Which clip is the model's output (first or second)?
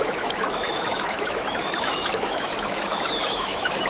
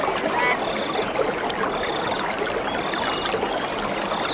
first